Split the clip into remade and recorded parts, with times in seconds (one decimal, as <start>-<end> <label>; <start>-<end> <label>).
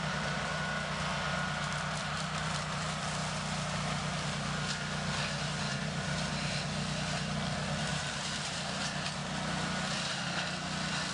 0.0-0.5 remade; 0.5-1.9 recorded; 1.9-3.2 remade; 3.2-5.7 recorded; 5.7-6.3 remade; 6.3-7.8 recorded; 7.8-9.2 remade; 9.2-11.1 recorded